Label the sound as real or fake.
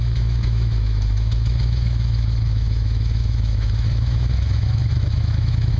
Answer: fake